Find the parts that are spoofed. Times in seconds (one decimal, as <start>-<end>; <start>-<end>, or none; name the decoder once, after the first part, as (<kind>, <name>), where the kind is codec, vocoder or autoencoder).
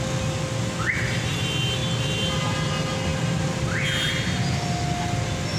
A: none